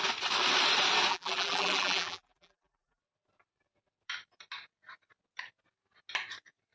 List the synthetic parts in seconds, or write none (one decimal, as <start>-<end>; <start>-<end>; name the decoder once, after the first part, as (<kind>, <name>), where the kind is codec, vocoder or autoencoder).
1.1-3.0 (vocoder, BigVGAN v2)